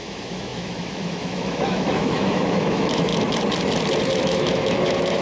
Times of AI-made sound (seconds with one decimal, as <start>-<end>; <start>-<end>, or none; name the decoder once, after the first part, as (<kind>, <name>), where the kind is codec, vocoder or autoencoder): 0.0-3.1 (autoencoder, DAC-VAE); 4.2-5.2